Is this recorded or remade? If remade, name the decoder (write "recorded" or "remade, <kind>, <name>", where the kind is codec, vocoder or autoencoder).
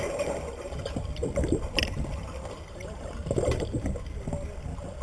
recorded